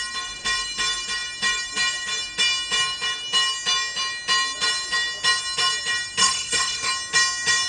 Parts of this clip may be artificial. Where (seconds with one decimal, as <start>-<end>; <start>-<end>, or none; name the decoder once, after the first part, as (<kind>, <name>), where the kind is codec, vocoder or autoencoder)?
6.2-6.9 (codec, SNAC)